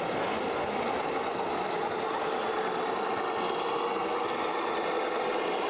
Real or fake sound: real